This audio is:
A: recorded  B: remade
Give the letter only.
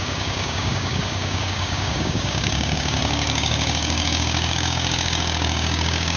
B